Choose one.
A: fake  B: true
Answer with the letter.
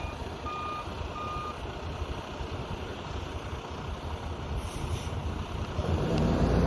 B